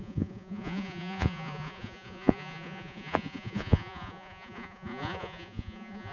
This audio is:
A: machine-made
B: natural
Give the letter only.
A